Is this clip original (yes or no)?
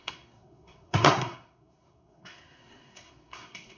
no